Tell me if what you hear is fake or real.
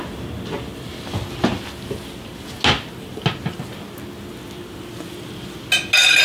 real